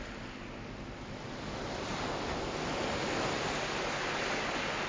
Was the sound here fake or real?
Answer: real